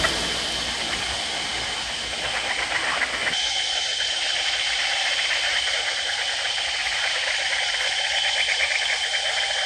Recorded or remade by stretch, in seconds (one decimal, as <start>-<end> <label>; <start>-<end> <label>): 0.0-6.8 recorded; 6.8-7.6 remade; 7.6-9.7 recorded